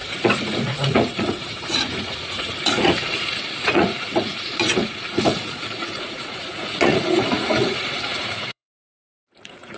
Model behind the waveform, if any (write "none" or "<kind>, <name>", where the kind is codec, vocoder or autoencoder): vocoder, Vocos